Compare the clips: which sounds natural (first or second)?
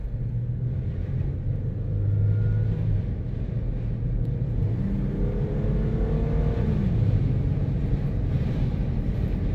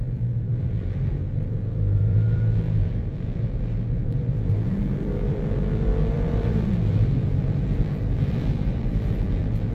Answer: first